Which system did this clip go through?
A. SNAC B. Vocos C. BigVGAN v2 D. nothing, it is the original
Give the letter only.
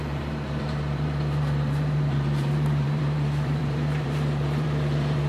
C